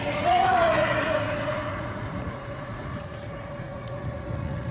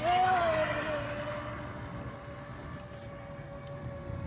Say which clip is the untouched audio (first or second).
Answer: second